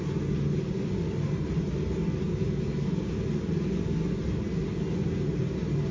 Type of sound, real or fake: real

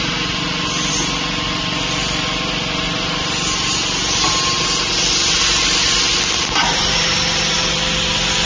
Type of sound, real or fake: real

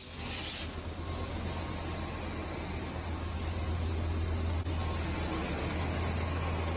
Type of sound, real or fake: real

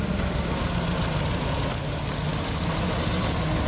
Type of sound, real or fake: real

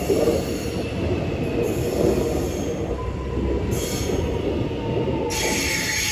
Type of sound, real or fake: real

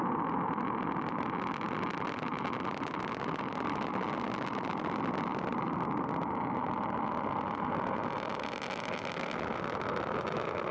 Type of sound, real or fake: real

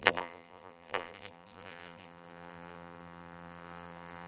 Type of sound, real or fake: fake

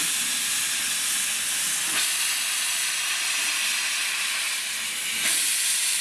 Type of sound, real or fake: real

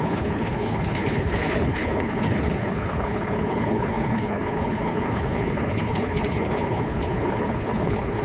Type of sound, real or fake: fake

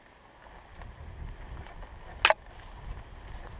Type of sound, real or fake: real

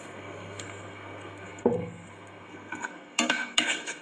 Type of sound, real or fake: fake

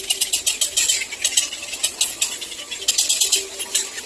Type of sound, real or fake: real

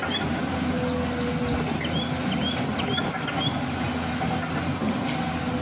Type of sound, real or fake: real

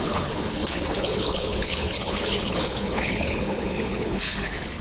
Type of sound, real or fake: fake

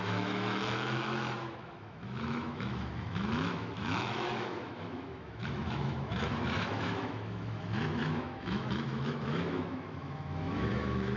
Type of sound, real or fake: fake